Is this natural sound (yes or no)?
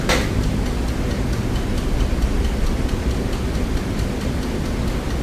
yes